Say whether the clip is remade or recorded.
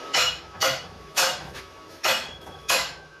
remade